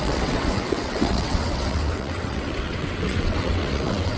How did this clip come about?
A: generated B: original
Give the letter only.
A